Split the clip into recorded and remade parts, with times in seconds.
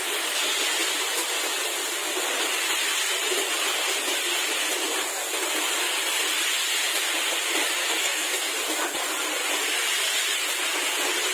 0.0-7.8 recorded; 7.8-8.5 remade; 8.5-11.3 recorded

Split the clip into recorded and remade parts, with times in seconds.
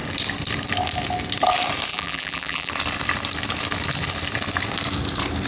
0.0-1.9 recorded; 1.9-2.7 remade; 2.7-5.5 recorded